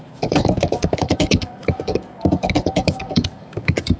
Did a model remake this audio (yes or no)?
yes